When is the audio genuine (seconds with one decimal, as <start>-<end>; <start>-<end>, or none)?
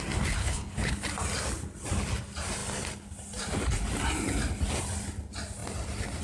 0.0-0.4; 0.9-6.2